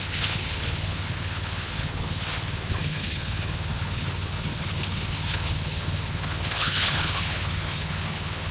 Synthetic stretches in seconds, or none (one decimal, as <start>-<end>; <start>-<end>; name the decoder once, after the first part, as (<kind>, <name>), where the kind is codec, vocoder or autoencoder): 0.0-8.5 (codec, HILCodec)